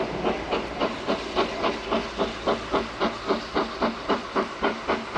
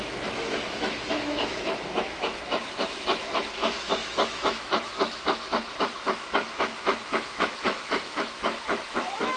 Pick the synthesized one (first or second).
second